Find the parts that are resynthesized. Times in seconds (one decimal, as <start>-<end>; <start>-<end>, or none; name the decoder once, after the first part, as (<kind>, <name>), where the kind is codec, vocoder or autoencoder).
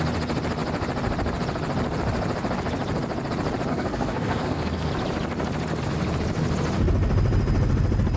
3.7-4.9 (codec, SNAC)